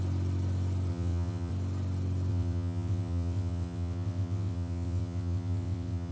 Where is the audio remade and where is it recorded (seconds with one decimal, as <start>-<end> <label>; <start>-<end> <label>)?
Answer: 0.0-0.9 recorded; 0.9-1.5 remade; 1.5-2.3 recorded; 2.3-6.1 remade